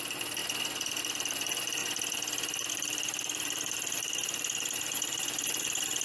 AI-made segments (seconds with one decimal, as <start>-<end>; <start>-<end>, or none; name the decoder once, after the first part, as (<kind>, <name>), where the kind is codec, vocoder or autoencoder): 0.0-0.4 (vocoder, BigVGAN v2); 1.0-1.8; 2.7-6.0